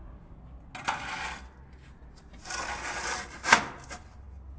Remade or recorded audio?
recorded